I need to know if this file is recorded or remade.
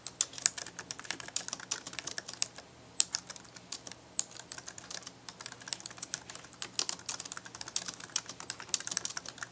recorded